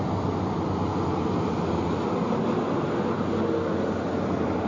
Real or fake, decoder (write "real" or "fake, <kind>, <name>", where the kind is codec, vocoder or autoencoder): real